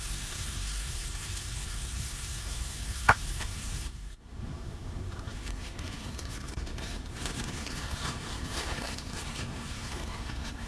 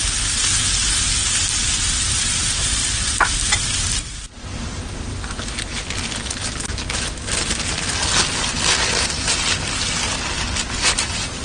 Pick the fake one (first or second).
first